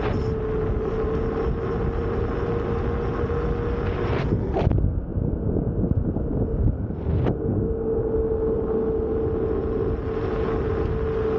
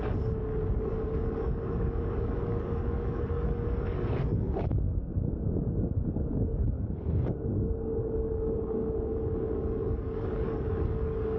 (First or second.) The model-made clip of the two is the second